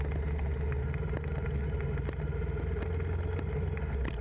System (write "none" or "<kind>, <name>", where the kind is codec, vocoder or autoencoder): none